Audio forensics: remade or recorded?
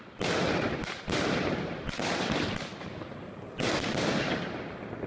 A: recorded